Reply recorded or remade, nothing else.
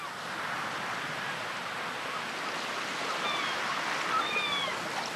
recorded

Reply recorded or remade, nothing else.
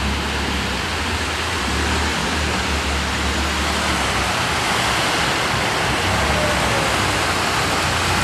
recorded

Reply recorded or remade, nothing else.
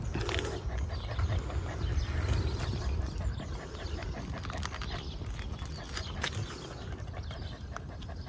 recorded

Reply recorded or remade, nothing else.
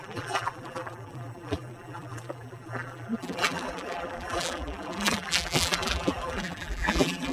remade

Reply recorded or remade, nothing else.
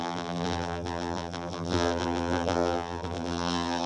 remade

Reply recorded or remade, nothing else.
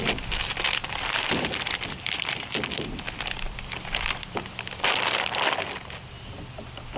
remade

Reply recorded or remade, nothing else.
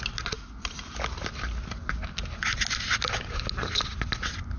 recorded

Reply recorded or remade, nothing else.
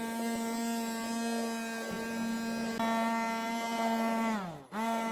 recorded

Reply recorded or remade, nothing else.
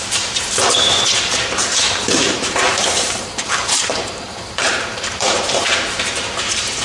remade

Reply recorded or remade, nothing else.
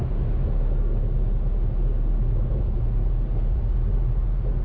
recorded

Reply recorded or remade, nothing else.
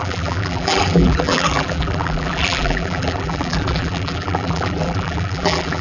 remade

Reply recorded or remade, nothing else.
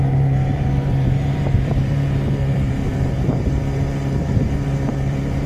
remade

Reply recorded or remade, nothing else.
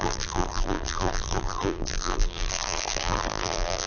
remade